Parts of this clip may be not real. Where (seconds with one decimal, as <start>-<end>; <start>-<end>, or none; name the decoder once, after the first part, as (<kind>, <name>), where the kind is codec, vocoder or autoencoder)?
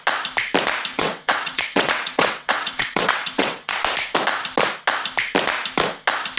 0.9-3.8 (vocoder, WaveNeXt)